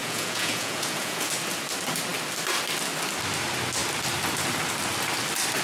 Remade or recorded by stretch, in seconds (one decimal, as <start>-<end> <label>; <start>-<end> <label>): 0.0-1.3 remade; 1.3-5.6 recorded